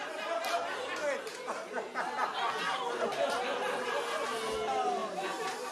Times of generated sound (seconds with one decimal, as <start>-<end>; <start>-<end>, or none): none